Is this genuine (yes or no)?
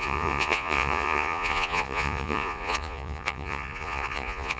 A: no